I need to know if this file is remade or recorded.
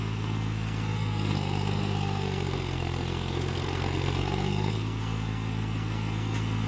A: remade